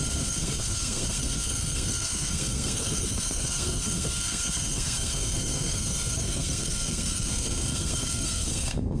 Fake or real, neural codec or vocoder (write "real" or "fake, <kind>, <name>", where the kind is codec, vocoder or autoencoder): fake, codec, SNAC